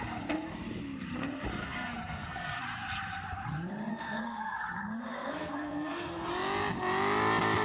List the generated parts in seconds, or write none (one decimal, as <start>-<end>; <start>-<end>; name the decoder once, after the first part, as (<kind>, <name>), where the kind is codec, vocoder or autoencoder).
1.6-2.6 (codec, SNAC); 3.9-6.3